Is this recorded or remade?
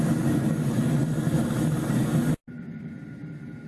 recorded